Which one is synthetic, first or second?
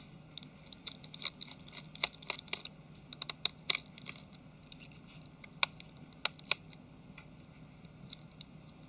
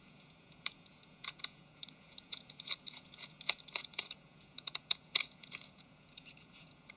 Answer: second